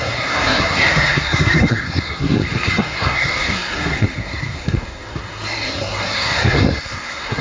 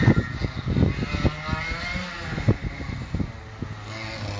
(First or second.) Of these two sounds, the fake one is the first